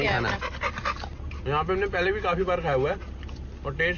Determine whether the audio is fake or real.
real